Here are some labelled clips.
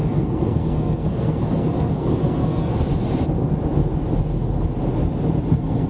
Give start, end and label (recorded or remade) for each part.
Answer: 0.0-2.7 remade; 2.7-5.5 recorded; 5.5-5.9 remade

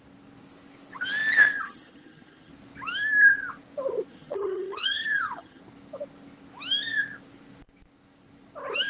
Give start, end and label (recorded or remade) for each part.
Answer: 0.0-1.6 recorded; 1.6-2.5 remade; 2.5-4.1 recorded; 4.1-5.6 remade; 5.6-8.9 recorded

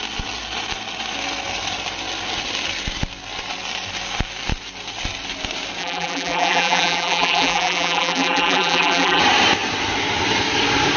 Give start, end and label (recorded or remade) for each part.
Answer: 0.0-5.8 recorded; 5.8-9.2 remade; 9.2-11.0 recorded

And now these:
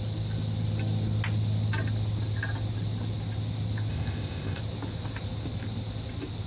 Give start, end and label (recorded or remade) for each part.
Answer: 0.0-3.9 recorded; 3.9-4.6 remade; 4.6-6.5 recorded

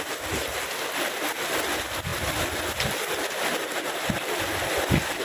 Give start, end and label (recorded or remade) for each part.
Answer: 0.0-5.2 recorded

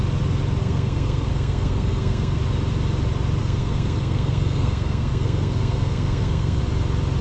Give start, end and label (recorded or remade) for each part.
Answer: 0.0-0.6 recorded; 0.6-2.4 remade; 2.4-3.4 recorded; 3.4-6.6 remade; 6.6-7.2 recorded